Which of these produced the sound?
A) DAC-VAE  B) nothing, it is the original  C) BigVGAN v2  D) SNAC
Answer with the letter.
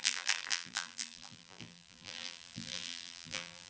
C